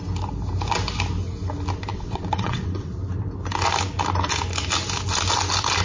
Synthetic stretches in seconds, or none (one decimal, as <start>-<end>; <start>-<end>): 1.9-2.9